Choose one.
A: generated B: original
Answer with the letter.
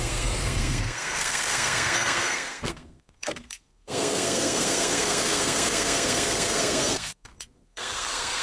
A